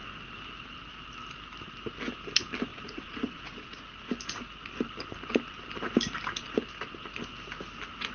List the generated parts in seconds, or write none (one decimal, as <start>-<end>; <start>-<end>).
2.7-3.8